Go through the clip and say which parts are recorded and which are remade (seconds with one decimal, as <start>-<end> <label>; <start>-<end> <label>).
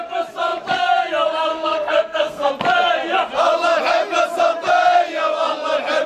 0.0-1.5 recorded; 1.5-2.5 remade; 2.5-6.1 recorded